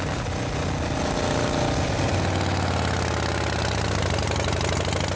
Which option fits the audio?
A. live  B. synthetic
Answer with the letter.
A